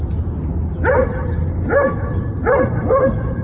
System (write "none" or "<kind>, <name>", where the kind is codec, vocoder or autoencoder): none